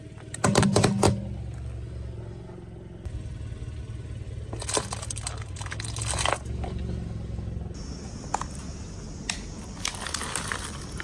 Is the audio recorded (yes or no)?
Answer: yes